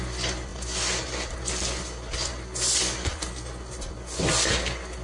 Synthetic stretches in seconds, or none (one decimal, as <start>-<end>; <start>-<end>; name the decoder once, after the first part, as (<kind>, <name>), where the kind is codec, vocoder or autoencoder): none